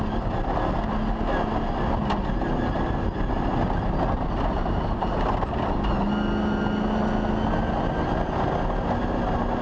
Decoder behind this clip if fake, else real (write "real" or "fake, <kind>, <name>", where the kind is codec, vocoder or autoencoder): real